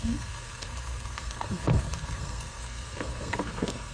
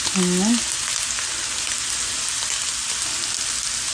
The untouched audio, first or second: second